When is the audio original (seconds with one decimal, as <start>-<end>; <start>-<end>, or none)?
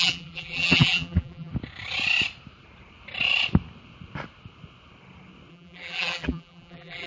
1.5-5.5